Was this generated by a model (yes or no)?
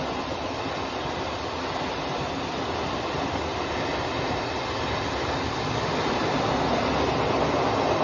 no